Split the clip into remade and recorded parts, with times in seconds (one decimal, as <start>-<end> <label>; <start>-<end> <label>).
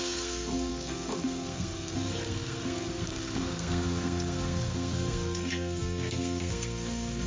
0.0-7.3 remade